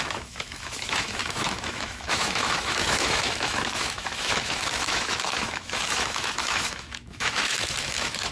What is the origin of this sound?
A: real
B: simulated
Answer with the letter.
B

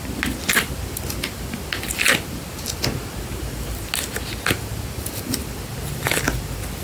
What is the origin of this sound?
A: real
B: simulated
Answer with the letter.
A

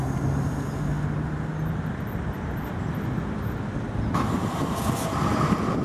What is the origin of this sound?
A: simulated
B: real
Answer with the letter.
B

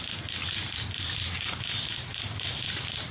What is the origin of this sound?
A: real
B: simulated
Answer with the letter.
A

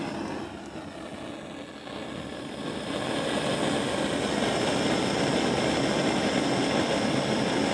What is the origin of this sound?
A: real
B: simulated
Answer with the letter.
A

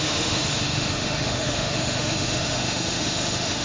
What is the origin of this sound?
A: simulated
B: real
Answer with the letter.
A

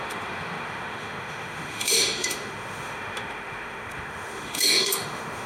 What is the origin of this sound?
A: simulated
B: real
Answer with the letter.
A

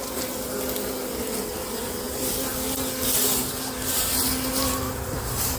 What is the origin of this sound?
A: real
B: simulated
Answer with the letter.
A